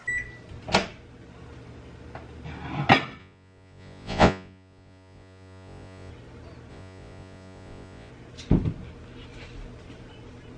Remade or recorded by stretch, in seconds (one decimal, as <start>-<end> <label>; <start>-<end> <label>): 0.0-3.2 recorded; 3.2-6.1 remade; 6.1-6.7 recorded; 6.7-8.1 remade; 8.1-10.6 recorded